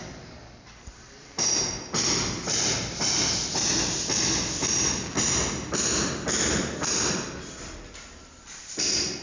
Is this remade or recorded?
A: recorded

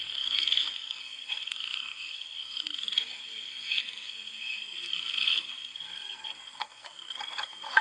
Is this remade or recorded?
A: remade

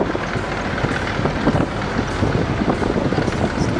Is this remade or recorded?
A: recorded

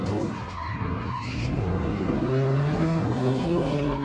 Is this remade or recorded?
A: remade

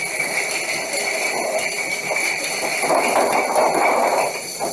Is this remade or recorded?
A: recorded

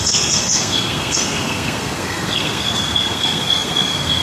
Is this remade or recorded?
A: remade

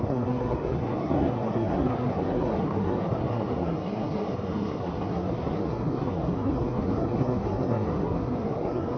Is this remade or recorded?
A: remade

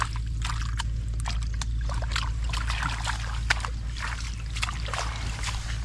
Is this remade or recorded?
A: recorded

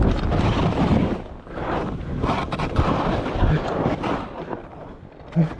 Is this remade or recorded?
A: recorded